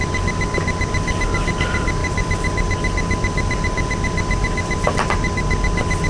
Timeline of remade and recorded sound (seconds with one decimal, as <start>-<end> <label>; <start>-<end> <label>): 0.0-6.1 recorded